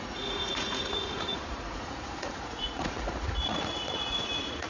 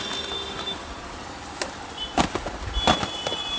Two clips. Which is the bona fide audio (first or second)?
second